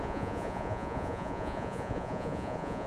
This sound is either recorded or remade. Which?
remade